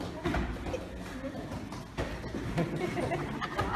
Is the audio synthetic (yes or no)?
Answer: no